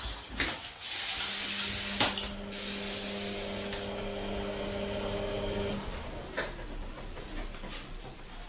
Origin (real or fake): real